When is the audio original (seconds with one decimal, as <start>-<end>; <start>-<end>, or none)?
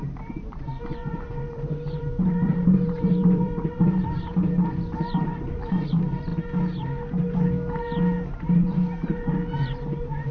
6.3-8.3